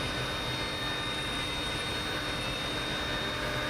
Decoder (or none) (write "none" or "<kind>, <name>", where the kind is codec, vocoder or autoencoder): none